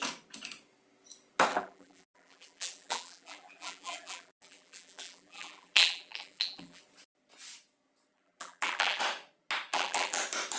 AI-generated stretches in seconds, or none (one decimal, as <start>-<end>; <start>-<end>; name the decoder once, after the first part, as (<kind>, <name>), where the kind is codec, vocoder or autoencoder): 1.5-6.8 (vocoder, BigVGAN v2); 8.1-9.0; 9.7-10.2